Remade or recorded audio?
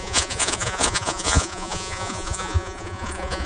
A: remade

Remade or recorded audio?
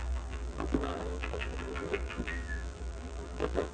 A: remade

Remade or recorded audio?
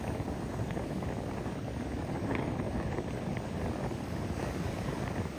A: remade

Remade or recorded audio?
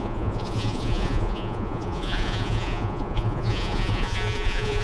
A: remade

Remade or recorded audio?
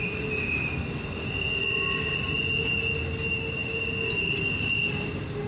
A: recorded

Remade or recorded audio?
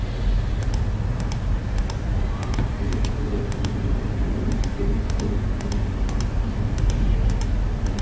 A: recorded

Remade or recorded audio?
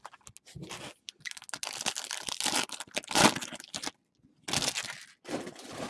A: recorded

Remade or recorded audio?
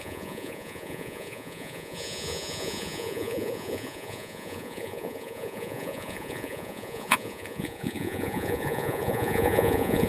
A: remade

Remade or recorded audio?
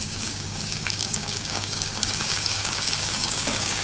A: remade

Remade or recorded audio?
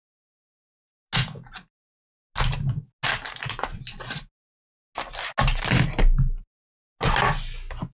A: recorded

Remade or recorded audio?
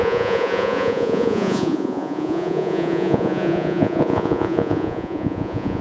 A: remade